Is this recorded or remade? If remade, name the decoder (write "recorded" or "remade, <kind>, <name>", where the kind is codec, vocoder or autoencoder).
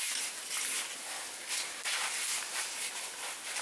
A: recorded